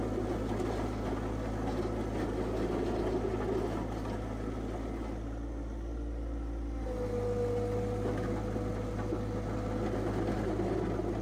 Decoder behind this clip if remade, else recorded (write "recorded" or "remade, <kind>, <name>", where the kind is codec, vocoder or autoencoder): recorded